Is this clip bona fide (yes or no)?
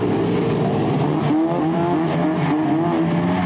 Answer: yes